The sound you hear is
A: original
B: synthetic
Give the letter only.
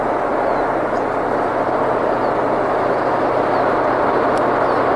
A